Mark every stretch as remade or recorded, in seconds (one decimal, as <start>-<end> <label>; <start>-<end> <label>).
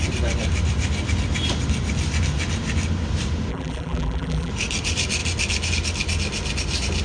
0.0-3.5 recorded; 3.5-4.5 remade; 4.5-7.0 recorded